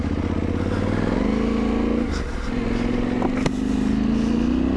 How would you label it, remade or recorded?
recorded